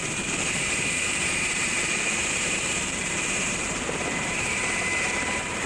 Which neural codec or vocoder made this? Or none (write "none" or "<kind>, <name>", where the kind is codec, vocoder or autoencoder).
vocoder, BigVGAN v2